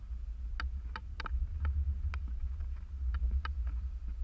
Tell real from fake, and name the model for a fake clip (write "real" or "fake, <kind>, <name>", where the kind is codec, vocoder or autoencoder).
real